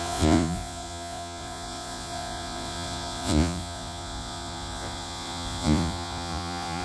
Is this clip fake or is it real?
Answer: fake